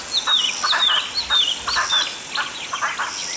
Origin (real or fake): real